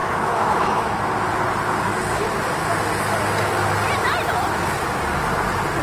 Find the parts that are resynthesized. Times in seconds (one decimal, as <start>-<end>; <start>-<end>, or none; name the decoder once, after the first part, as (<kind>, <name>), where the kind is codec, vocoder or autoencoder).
0.0-1.0 (autoencoder, DAC-VAE)